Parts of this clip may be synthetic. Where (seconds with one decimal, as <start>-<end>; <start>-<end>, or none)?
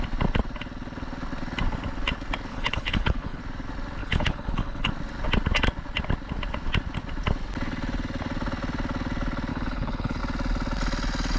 2.5-3.4; 4.0-4.9; 9.5-10.2